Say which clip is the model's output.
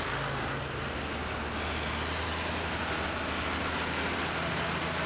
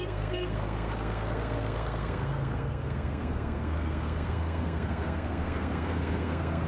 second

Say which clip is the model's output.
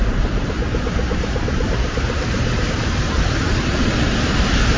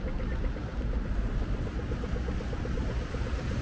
first